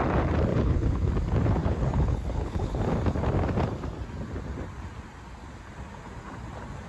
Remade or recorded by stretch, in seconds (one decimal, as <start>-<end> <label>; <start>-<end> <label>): 0.0-0.5 recorded; 0.5-1.1 remade; 1.1-1.6 recorded; 1.6-2.8 remade; 2.8-6.9 recorded